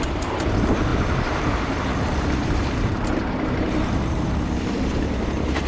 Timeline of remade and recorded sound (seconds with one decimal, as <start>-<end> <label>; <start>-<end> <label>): 0.0-5.7 remade